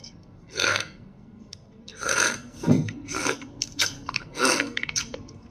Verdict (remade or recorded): remade